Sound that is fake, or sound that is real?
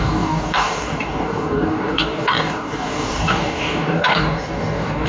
fake